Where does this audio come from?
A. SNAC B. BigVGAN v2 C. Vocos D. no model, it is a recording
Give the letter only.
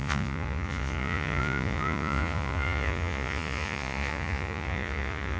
C